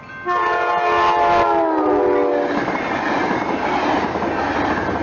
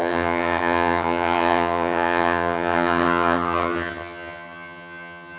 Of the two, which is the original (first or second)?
first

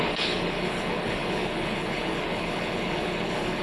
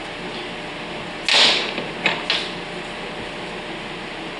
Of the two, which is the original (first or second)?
second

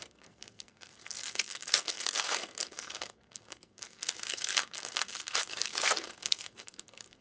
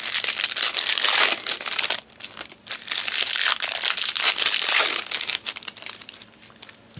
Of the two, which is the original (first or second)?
second